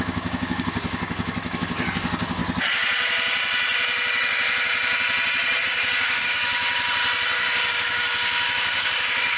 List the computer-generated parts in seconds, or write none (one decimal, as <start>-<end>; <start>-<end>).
0.0-2.4; 5.6-6.6; 7.7-9.4